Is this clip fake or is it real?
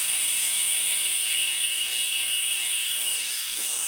fake